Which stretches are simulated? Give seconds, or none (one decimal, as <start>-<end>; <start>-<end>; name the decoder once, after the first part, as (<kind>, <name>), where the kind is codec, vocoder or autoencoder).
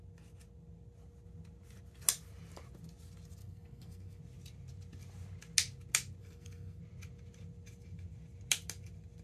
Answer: 3.4-4.2 (codec, SNAC); 6.2-6.8